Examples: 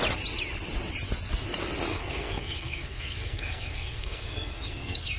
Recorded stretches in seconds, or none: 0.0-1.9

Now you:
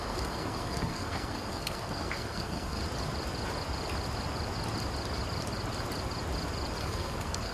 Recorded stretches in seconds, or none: 2.8-6.8

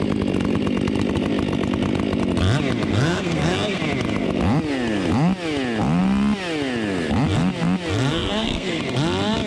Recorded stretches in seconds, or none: 0.0-2.9; 3.8-8.1; 8.8-9.5